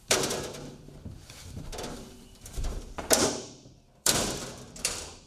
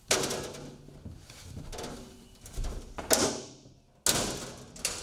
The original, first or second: second